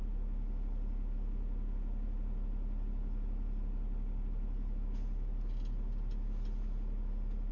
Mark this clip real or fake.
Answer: real